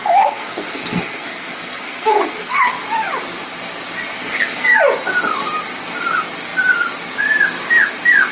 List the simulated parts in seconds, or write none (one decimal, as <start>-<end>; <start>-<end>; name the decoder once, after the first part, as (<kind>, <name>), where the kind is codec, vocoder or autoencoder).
0.0-2.7 (codec, SNAC); 4.2-4.8